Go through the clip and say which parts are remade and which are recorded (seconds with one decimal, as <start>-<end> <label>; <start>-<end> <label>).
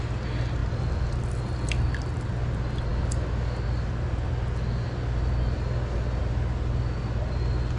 0.0-0.6 recorded; 0.6-1.2 remade; 1.2-7.8 recorded